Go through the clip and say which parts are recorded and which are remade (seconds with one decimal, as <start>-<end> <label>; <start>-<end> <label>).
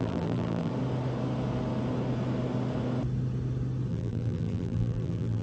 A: 0.0-0.7 remade; 0.7-3.9 recorded; 3.9-5.4 remade